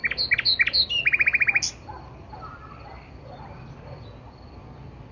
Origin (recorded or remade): recorded